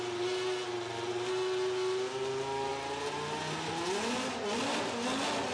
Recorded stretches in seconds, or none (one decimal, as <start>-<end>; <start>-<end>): 0.0-5.5